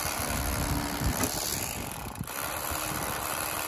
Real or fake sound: real